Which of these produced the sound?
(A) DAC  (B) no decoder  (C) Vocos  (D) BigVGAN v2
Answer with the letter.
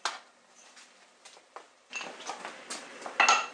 B